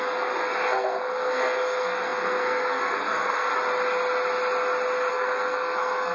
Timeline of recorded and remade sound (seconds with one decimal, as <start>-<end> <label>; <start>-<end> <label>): 0.0-3.5 remade; 3.5-5.1 recorded; 5.1-6.1 remade